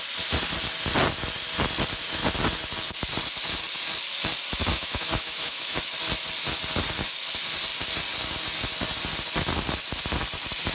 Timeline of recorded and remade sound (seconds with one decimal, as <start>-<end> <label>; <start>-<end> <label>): 0.0-4.7 recorded; 4.7-5.8 remade; 5.8-10.7 recorded